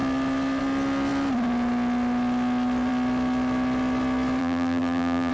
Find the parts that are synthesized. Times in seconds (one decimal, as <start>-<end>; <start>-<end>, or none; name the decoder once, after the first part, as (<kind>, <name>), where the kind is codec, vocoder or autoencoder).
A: 4.4-5.3 (vocoder, BigVGAN v2)